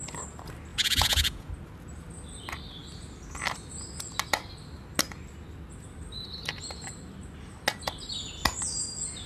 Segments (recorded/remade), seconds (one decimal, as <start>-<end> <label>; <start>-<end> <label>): 0.0-0.7 recorded; 0.7-1.5 remade; 1.5-9.3 recorded